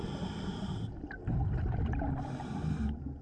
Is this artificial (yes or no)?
no